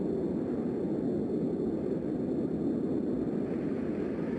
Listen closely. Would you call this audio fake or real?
real